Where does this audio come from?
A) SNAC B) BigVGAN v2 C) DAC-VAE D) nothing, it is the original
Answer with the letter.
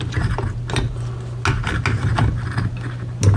D